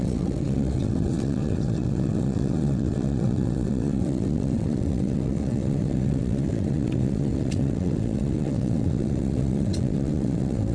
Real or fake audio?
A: fake